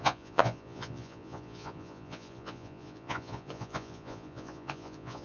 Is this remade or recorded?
remade